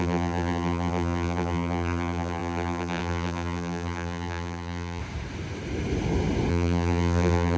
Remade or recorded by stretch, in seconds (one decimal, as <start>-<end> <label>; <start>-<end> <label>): 0.0-5.0 remade; 5.0-6.5 recorded; 6.5-7.6 remade